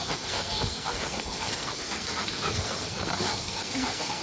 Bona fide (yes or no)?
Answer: no